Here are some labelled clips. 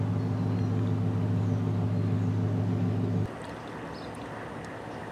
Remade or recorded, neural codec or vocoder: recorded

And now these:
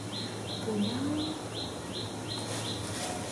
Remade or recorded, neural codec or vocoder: recorded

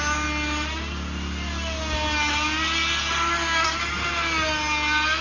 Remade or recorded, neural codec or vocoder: recorded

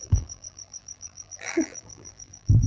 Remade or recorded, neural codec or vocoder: remade, vocoder, BigVGAN v2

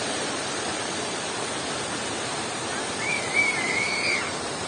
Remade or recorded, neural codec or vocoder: remade, vocoder, BigVGAN v2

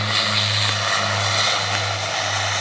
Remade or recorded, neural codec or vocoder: recorded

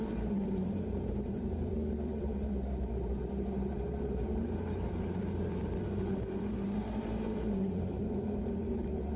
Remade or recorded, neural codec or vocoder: remade, vocoder, BigVGAN v2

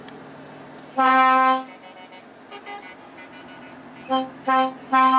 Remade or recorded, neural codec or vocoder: recorded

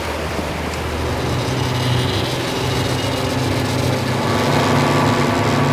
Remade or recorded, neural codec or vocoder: recorded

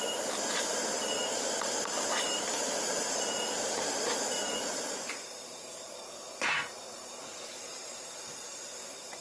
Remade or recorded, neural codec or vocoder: remade, vocoder, BigVGAN v2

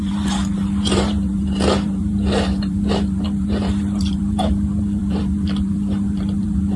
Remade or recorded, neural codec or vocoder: remade, vocoder, BigVGAN v2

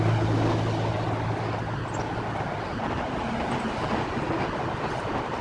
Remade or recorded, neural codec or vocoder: recorded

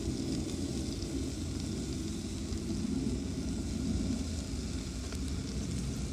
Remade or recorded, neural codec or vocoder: recorded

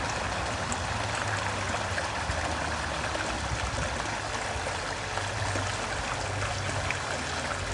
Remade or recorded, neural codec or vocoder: recorded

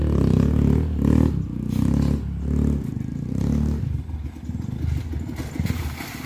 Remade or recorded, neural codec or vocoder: recorded